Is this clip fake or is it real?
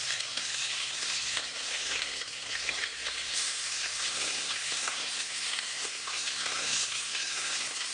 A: fake